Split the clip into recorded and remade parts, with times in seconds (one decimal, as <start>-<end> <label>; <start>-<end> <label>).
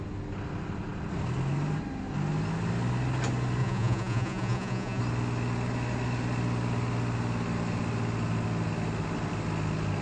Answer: 0.0-3.6 recorded; 3.6-5.0 remade; 5.0-10.0 recorded